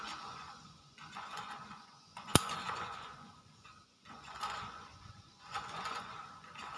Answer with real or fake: fake